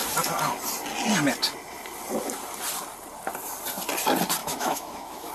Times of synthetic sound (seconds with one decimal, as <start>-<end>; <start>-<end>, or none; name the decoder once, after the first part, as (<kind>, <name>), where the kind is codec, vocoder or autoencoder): 4.4-5.3 (autoencoder, DAC-VAE)